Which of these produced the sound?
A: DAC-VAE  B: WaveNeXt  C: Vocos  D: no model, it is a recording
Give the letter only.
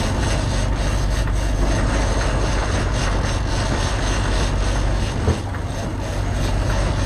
D